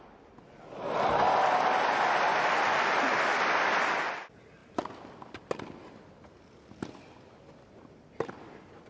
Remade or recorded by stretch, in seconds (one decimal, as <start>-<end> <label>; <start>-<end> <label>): 0.0-8.9 recorded